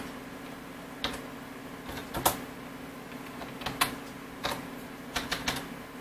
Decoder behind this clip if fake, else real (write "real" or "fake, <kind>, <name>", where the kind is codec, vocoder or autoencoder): real